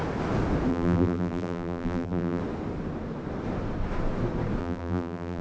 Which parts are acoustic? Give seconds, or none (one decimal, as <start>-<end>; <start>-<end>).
0.0-0.7; 2.4-4.6